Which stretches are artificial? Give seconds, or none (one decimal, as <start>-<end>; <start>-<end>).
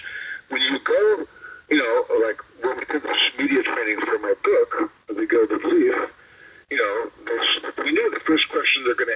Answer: none